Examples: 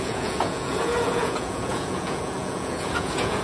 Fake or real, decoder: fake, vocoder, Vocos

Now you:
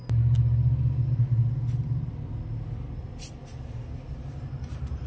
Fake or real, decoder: real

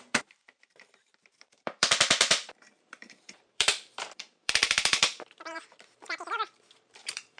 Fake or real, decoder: fake, vocoder, BigVGAN v2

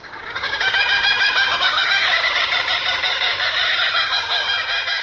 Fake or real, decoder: fake, codec, DAC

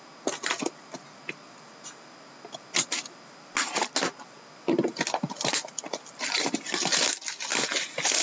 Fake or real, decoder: real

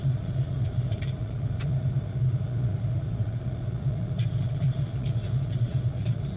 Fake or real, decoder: fake, vocoder, Vocos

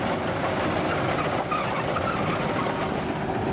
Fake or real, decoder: real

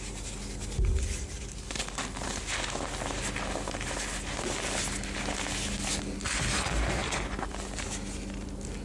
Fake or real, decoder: real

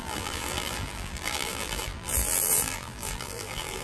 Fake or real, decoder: fake, vocoder, BigVGAN v2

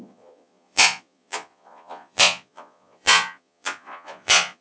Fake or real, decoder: fake, vocoder, Vocos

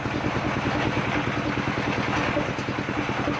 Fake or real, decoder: real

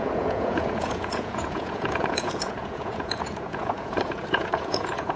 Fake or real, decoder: fake, vocoder, Vocos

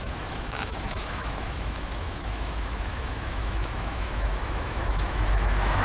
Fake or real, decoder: fake, autoencoder, DAC-VAE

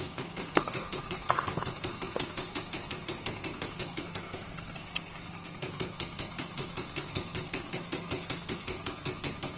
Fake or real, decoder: fake, codec, SNAC